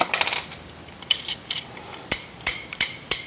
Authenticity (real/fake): fake